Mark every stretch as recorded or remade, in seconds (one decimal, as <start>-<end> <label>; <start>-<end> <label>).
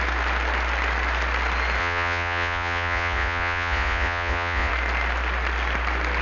0.0-1.8 recorded; 1.8-4.7 remade; 4.7-6.2 recorded